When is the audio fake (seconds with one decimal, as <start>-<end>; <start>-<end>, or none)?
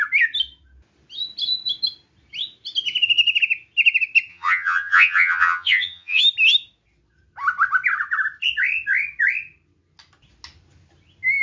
4.3-6.2